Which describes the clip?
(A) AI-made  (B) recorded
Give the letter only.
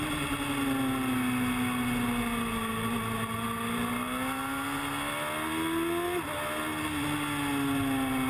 B